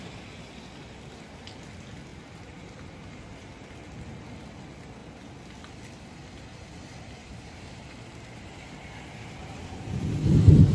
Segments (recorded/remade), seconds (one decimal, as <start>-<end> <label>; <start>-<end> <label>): 0.0-2.1 recorded; 2.1-3.7 remade; 3.7-7.2 recorded; 7.2-8.6 remade; 8.6-10.7 recorded